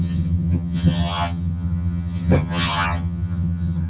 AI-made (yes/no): yes